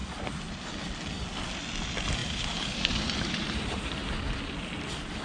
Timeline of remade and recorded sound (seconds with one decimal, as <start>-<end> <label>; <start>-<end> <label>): 0.0-2.2 recorded; 2.2-4.3 remade; 4.3-5.2 recorded